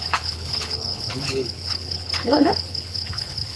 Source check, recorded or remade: remade